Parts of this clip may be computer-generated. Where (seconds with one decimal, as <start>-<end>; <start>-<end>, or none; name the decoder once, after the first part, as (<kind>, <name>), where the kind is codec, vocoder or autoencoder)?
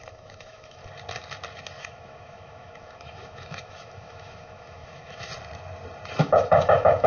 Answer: 0.0-0.8 (autoencoder, DAC-VAE); 1.8-5.3; 6.2-7.1